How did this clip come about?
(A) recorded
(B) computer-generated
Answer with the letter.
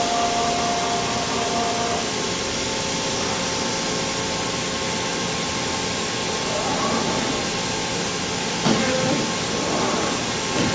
A